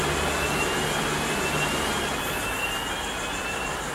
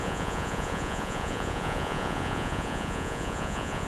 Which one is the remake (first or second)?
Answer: second